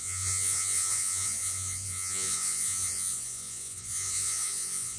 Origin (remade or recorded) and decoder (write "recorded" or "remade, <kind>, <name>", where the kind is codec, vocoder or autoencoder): remade, vocoder, Vocos